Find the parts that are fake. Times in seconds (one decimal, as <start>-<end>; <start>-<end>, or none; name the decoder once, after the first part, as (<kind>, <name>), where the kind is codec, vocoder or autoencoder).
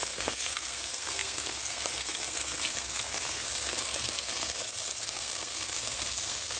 0.0-6.6 (codec, SNAC)